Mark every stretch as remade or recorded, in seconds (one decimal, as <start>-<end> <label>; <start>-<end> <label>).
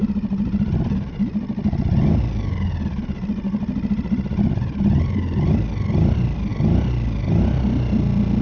0.0-8.4 recorded